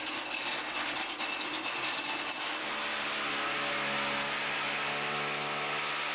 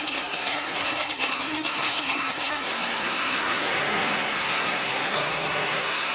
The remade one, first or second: second